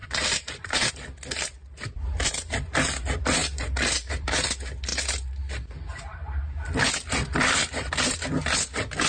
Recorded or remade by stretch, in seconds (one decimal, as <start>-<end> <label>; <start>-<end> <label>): 0.0-0.9 remade; 0.9-3.4 recorded; 3.4-4.4 remade; 4.4-4.9 recorded; 4.9-5.5 remade; 5.5-7.6 recorded; 7.6-8.5 remade; 8.5-9.1 recorded